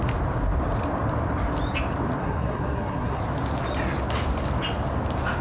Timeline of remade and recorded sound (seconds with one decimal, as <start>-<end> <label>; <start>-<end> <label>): 0.0-2.2 recorded; 2.2-3.2 remade; 3.2-5.4 recorded